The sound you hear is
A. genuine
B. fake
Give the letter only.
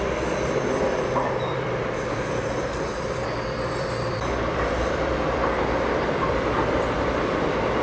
B